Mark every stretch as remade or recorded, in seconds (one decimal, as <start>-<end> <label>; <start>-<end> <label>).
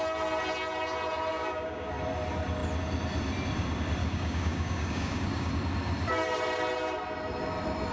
0.0-1.3 recorded; 1.3-1.9 remade; 1.9-4.0 recorded; 4.0-5.5 remade; 5.5-7.9 recorded